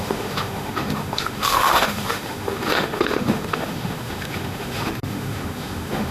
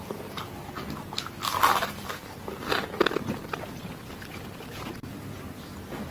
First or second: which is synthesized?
first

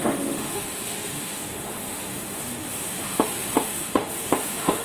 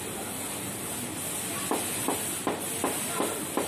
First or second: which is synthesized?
first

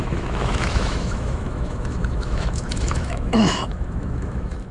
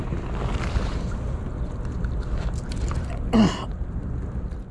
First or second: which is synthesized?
first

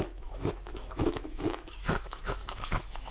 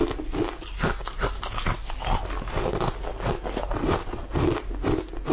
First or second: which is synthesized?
first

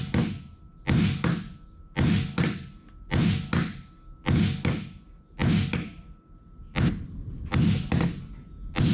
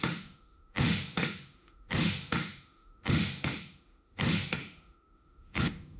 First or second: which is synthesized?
second